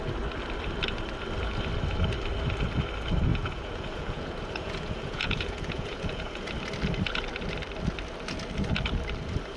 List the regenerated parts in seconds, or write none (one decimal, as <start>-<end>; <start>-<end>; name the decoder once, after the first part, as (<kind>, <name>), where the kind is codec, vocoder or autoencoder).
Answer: 3.3-6.5 (vocoder, Vocos)

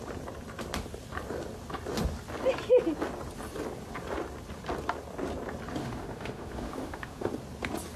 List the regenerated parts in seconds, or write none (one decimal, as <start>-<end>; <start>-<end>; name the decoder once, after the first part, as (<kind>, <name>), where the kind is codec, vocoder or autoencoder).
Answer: 5.8-7.3 (autoencoder, DAC-VAE)

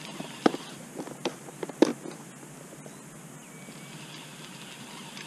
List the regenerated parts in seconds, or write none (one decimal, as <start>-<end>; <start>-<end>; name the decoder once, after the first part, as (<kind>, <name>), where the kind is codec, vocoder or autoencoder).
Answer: 0.0-1.9 (vocoder, BigVGAN v2); 4.8-5.3

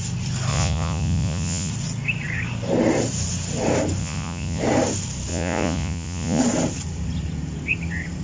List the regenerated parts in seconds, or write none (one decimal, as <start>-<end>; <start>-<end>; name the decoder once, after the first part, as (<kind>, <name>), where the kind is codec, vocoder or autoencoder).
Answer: 0.5-1.7 (vocoder, Vocos); 4.0-4.6; 5.3-6.4

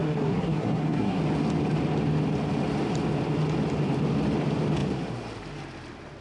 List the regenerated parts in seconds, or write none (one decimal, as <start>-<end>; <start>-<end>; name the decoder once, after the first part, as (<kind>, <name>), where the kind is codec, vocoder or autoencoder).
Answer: 0.0-1.2 (codec, SNAC)